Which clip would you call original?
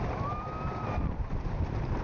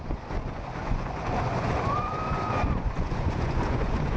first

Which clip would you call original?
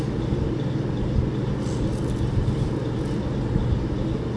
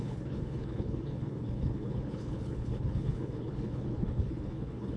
first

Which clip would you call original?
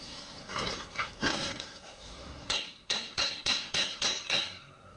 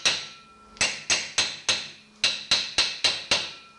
second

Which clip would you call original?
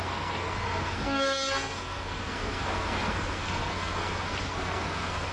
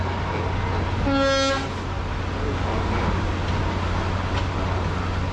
second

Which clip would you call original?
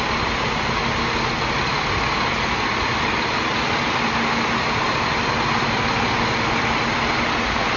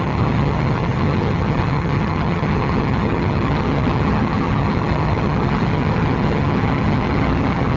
first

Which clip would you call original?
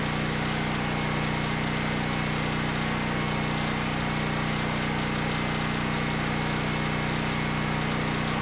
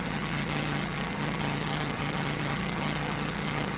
first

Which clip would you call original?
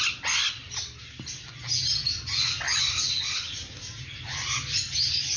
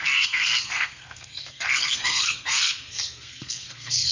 first